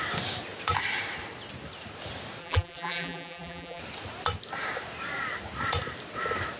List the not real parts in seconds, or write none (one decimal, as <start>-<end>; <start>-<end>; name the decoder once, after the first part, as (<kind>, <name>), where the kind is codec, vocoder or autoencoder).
2.4-3.8 (vocoder, BigVGAN v2)